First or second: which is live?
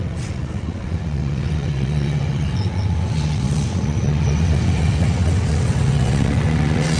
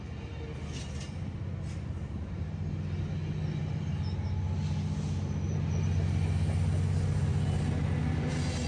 second